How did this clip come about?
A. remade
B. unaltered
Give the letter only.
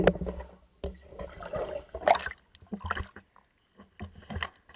B